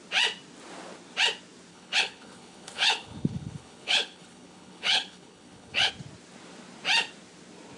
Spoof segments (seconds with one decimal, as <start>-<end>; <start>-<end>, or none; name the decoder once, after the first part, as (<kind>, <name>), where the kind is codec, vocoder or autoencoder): 1.7-5.9 (codec, HILCodec)